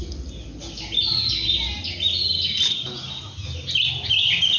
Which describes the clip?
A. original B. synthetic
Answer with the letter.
A